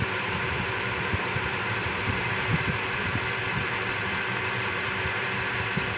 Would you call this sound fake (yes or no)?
yes